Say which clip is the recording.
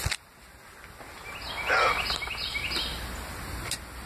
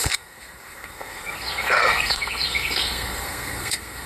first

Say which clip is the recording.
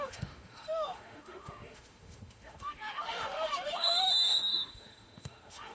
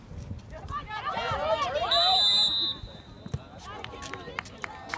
second